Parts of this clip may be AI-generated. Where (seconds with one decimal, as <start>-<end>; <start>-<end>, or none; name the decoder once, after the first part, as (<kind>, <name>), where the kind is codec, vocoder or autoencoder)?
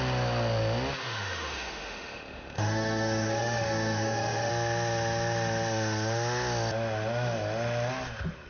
1.0-4.5 (autoencoder, DAC-VAE)